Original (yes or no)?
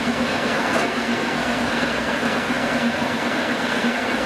no